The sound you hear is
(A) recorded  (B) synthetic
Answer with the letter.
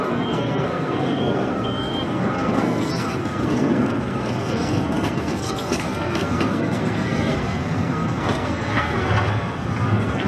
B